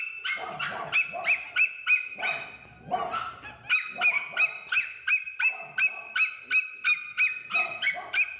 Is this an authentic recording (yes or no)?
yes